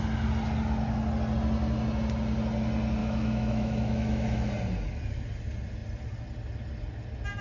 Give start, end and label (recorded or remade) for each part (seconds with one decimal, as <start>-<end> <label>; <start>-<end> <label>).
0.0-3.0 recorded; 3.0-4.5 remade; 4.5-7.4 recorded